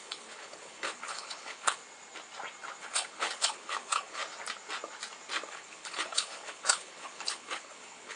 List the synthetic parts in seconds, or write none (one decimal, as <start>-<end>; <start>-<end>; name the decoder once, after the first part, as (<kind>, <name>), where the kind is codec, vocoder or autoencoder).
0.0-1.8 (codec, HILCodec); 2.8-4.2; 5.5-8.2